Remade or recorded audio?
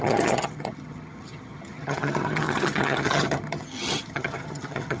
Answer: remade